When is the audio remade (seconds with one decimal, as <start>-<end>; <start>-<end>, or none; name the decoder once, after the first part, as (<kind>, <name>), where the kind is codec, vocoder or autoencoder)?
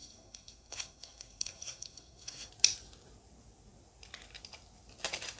0.0-2.5 (codec, SNAC)